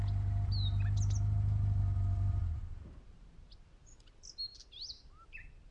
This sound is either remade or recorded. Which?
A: recorded